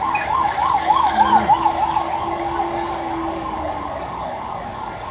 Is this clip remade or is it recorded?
remade